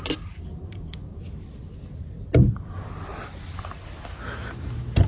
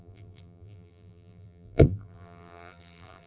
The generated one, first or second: second